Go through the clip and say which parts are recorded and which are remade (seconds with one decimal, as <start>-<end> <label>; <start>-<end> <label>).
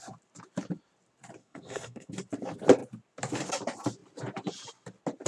0.0-1.4 recorded; 1.4-2.1 remade; 2.1-5.3 recorded